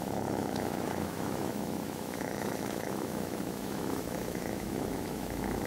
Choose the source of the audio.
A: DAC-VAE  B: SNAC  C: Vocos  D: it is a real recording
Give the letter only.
A